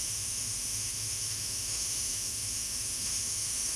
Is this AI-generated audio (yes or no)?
yes